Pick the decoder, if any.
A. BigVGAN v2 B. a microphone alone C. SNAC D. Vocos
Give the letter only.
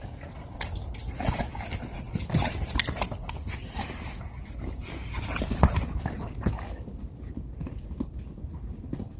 B